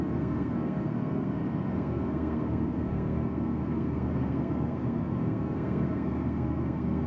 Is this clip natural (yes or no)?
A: no